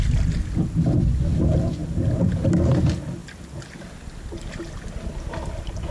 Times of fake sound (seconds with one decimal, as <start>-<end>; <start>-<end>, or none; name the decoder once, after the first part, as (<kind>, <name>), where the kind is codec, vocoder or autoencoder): none